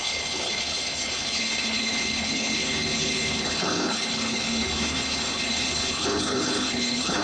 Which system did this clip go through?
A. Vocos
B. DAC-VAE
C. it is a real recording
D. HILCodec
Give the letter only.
D